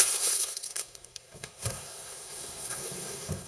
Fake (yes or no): yes